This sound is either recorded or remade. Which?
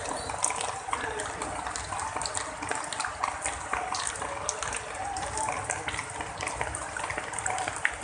recorded